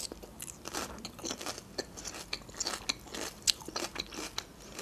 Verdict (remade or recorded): recorded